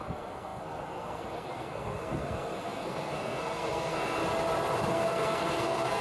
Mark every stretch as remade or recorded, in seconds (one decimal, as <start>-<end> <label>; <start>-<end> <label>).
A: 0.0-4.2 remade; 4.2-4.9 recorded; 4.9-6.0 remade